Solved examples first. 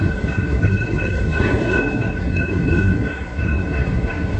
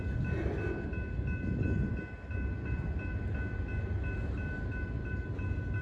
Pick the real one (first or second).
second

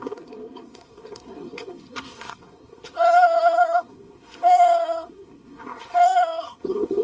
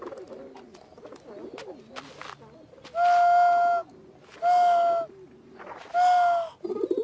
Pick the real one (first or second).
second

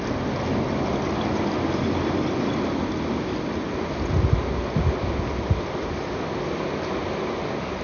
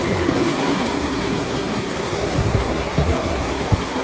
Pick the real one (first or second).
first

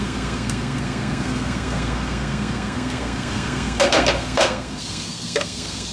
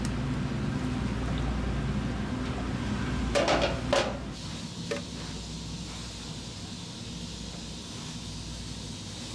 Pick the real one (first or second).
second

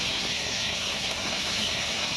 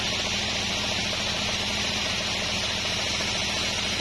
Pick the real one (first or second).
second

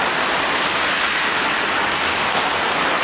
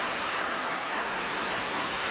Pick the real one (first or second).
first